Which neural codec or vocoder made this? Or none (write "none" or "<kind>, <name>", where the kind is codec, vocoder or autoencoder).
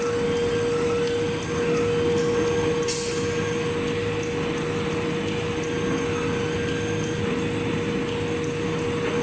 none